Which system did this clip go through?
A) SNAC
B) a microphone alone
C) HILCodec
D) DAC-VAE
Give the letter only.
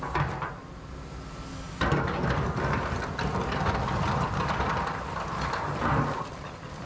B